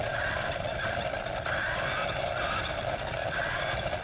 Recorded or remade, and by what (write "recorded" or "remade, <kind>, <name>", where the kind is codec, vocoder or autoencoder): recorded